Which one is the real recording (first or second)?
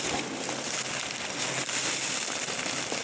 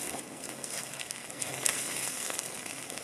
first